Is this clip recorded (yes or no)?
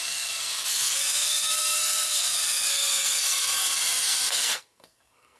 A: no